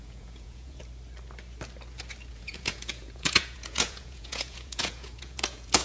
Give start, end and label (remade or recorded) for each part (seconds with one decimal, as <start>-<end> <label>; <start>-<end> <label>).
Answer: 0.0-0.8 remade; 0.8-2.3 recorded; 2.3-5.8 remade